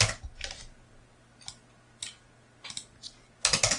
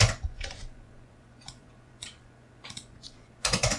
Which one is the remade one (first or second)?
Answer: second